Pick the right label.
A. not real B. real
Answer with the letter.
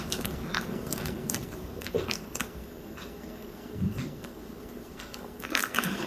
A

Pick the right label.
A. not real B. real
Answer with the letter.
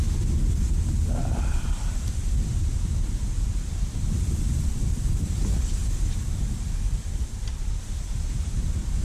A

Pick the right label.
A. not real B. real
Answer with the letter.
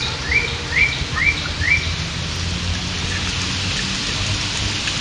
B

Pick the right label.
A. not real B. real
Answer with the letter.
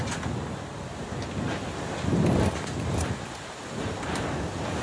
B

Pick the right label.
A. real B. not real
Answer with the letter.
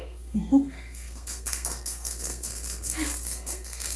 B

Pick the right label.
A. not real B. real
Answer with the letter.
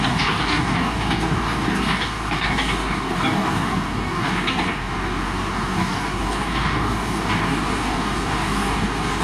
A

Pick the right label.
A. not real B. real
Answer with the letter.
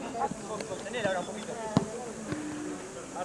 B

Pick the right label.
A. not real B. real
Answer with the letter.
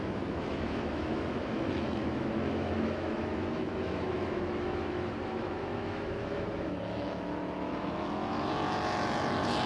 A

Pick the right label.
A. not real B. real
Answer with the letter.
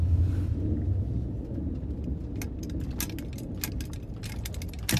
B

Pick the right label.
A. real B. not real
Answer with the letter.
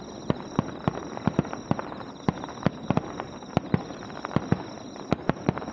A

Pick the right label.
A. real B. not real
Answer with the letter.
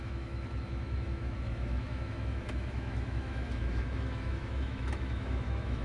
B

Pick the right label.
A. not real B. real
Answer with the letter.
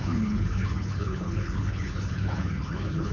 A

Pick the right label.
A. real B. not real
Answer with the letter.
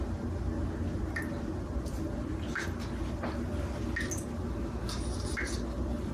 A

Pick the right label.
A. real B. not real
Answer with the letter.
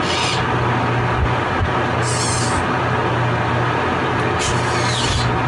A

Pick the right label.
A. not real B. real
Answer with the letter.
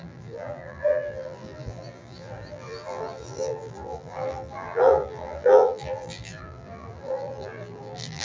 A